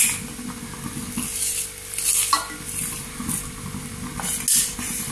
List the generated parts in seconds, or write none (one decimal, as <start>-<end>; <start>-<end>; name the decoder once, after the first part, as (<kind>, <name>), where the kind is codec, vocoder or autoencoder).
none